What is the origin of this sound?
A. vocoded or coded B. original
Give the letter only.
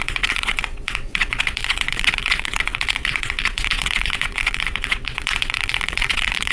A